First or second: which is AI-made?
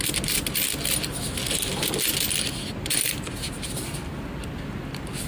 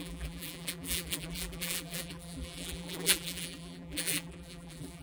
second